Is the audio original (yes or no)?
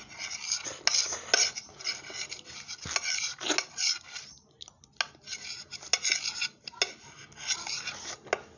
yes